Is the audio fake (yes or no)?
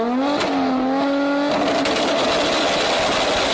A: no